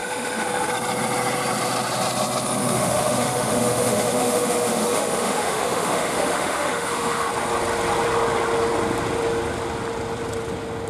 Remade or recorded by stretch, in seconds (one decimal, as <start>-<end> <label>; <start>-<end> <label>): 0.0-0.7 remade; 0.7-2.6 recorded; 2.6-7.3 remade; 7.3-10.9 recorded